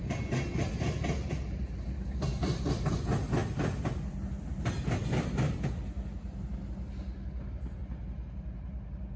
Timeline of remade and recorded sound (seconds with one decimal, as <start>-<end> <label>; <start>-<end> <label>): 0.0-9.2 recorded